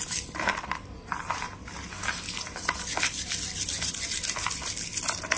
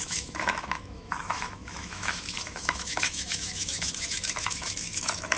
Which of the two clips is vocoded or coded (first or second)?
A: second